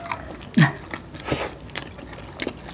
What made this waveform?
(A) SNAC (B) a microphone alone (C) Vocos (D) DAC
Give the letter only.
B